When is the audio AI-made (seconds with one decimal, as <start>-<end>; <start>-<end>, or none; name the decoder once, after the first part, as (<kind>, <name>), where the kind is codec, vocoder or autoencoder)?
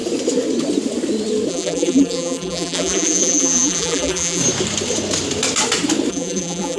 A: 1.5-4.4 (vocoder, BigVGAN v2); 6.1-6.8